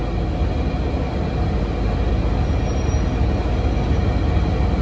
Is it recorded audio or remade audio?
recorded